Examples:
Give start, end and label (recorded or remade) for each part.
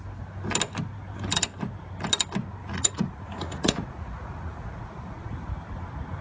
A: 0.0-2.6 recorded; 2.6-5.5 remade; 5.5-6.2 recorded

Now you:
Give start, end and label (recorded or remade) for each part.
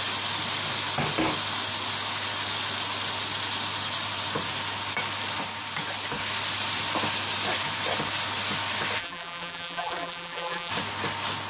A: 0.0-9.0 recorded; 9.0-10.7 remade; 10.7-11.5 recorded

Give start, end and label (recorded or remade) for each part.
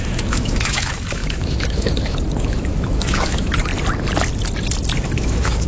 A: 0.0-3.7 remade; 3.7-5.1 recorded; 5.1-5.7 remade